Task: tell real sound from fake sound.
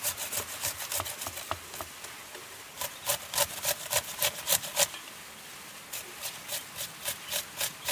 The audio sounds real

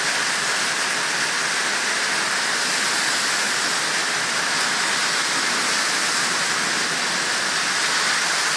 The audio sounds real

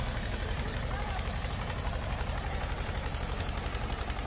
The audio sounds fake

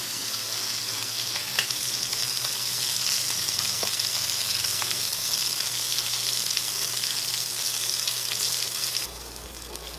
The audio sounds fake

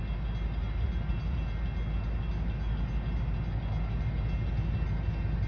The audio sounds real